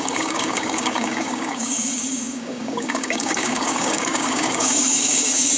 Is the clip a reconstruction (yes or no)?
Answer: yes